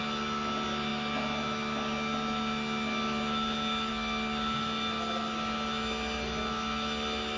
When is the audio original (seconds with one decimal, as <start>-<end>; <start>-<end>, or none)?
0.0-7.4